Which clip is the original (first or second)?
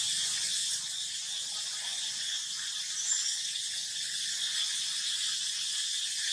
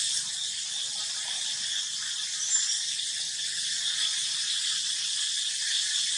second